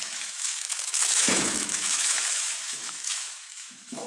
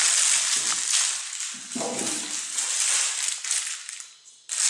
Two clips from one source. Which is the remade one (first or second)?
first